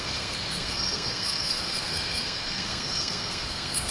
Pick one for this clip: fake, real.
fake